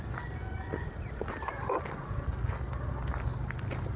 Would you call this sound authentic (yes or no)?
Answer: yes